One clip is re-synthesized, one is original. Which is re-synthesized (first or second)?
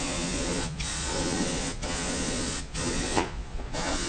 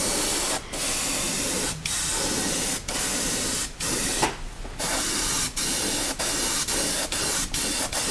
first